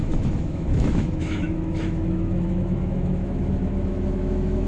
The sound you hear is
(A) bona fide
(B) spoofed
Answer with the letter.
B